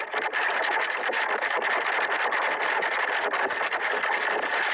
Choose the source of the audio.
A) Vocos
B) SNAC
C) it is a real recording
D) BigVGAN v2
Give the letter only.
C